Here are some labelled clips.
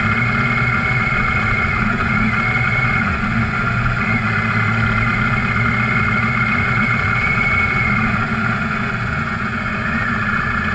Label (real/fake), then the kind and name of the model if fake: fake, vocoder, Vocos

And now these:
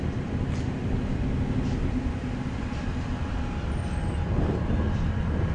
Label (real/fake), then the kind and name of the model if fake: fake, vocoder, BigVGAN v2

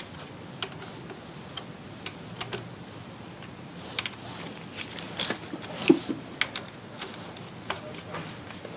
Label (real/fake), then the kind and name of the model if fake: real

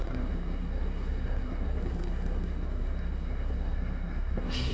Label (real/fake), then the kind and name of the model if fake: fake, codec, SNAC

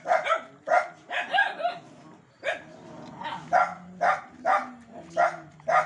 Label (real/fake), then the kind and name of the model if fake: real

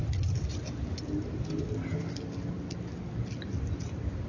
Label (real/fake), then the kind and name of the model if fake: real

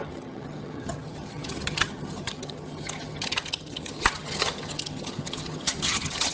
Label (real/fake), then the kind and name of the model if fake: fake, vocoder, HiFi-GAN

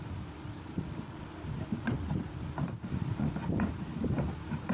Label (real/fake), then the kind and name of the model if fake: fake, vocoder, BigVGAN v2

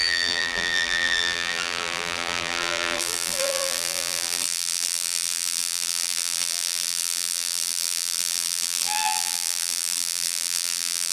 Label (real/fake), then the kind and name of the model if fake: fake, vocoder, BigVGAN v2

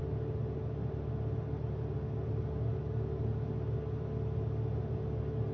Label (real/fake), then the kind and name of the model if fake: real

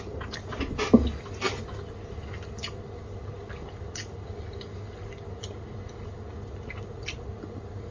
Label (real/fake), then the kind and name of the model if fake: real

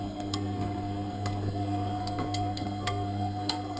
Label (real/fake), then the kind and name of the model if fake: fake, codec, SNAC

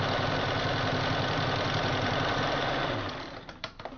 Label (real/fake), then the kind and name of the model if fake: real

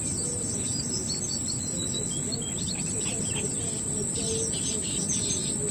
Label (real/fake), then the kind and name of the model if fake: real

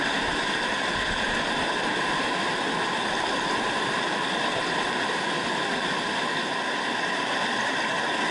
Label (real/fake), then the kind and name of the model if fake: real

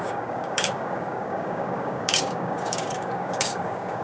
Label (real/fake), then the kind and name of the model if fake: fake, codec, DAC